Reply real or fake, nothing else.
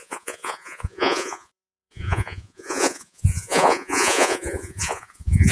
fake